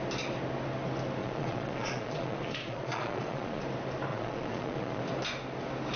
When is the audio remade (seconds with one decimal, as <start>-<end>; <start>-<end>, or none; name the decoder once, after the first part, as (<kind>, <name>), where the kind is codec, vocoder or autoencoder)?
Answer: 1.2-3.6 (vocoder, Vocos); 4.1-5.0